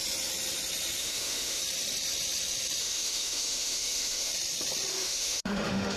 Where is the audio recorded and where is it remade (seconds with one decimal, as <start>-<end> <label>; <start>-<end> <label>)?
0.0-1.0 recorded; 1.0-1.6 remade; 1.6-2.8 recorded; 2.8-4.3 remade; 4.3-4.9 recorded; 4.9-6.0 remade